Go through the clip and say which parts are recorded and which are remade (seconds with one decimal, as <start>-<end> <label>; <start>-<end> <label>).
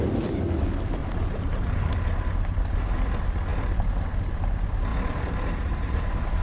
0.0-1.0 recorded; 1.0-1.9 remade; 1.9-4.9 recorded; 4.9-6.4 remade